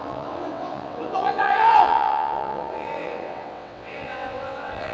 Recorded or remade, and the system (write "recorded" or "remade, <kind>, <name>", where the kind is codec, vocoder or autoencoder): remade, vocoder, WaveNeXt